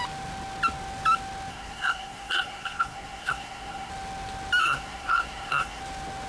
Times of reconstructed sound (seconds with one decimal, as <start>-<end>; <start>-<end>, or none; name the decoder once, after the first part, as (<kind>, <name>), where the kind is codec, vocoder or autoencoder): 1.5-3.9 (codec, SNAC); 4.6-5.8